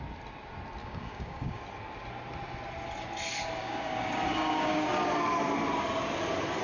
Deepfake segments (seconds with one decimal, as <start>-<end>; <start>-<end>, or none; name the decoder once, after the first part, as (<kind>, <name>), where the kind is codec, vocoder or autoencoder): 0.8-1.6 (codec, DAC); 3.6-4.9